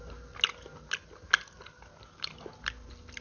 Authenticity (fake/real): real